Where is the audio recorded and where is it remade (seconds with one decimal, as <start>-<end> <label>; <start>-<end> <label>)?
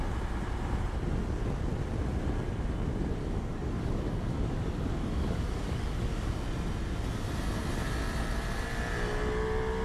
0.0-3.2 recorded; 3.2-6.3 remade; 6.3-9.8 recorded